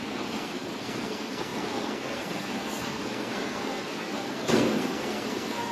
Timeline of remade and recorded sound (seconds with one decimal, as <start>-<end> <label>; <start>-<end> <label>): 0.0-5.7 remade